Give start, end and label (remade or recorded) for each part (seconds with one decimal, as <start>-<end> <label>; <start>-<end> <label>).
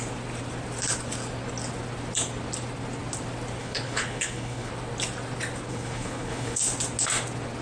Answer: 0.0-3.6 recorded; 3.6-4.7 remade; 4.7-5.7 recorded; 5.7-6.6 remade; 6.6-7.6 recorded